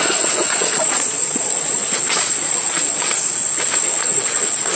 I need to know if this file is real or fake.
fake